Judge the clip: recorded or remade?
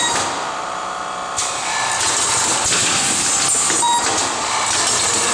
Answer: recorded